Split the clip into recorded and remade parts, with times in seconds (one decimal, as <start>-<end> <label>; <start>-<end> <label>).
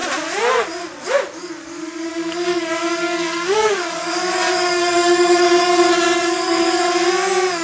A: 0.0-1.4 recorded; 1.4-2.1 remade; 2.1-2.5 recorded; 2.5-6.9 remade; 6.9-7.6 recorded